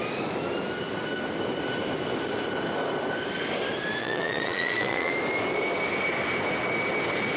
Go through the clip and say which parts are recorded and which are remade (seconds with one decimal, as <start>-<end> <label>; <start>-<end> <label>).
0.0-4.0 recorded; 4.0-5.1 remade; 5.1-7.4 recorded